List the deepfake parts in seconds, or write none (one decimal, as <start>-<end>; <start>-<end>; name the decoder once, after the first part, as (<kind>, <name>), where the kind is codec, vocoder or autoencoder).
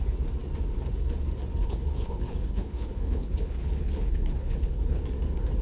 1.6-5.0 (codec, HILCodec)